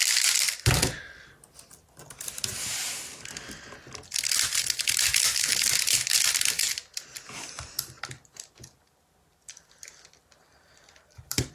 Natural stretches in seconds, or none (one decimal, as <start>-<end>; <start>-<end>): 0.0-10.5